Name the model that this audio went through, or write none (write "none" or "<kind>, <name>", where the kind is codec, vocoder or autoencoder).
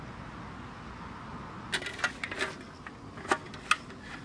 none